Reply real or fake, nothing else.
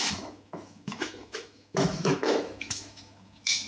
fake